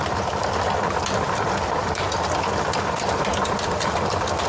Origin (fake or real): real